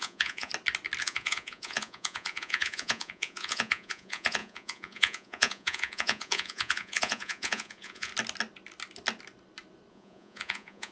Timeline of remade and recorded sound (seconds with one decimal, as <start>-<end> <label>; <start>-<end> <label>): 0.0-0.5 remade; 0.5-1.0 recorded; 1.0-8.1 remade; 8.1-9.9 recorded; 9.9-10.9 remade